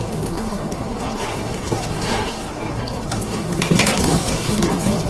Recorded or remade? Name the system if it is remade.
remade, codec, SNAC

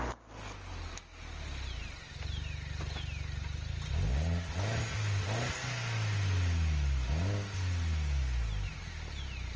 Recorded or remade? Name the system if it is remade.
recorded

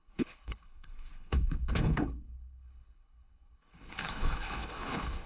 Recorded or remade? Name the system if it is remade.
remade, codec, HILCodec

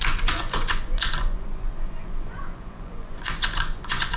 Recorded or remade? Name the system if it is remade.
remade, vocoder, Vocos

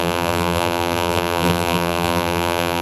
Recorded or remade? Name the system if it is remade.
remade, vocoder, BigVGAN v2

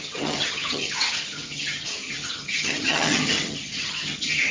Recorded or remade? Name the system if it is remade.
remade, vocoder, HiFi-GAN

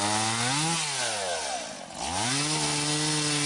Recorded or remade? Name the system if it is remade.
recorded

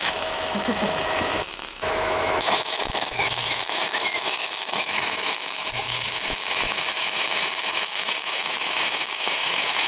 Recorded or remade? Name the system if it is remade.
remade, autoencoder, DAC-VAE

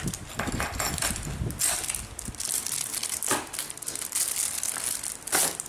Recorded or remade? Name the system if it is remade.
recorded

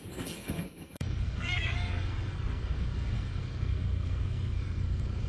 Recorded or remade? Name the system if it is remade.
remade, codec, SNAC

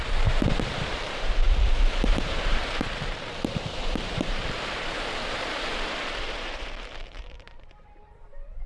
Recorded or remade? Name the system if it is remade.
remade, vocoder, BigVGAN v2